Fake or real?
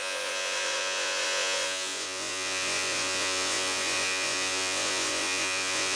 fake